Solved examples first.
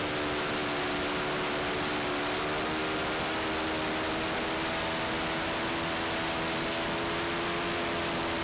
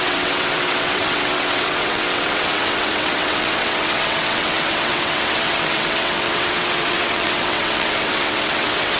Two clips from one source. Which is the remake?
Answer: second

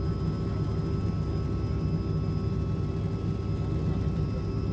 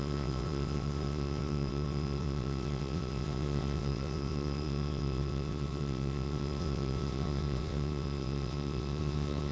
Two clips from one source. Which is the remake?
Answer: second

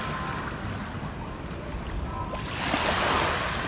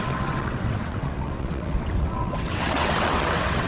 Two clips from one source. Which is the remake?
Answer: second